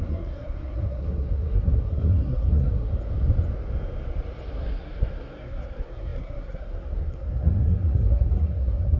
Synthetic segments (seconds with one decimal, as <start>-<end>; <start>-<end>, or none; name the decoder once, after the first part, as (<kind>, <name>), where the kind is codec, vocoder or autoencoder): 0.0-2.9 (codec, SNAC); 4.5-9.0